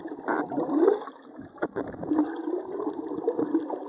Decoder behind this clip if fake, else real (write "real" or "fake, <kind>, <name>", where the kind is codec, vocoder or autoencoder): real